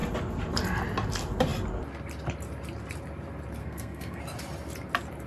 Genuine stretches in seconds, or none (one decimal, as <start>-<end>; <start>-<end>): 0.0-3.6; 4.2-5.3